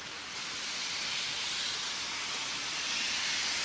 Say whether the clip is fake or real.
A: fake